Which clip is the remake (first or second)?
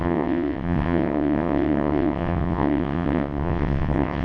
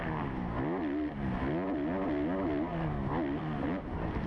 first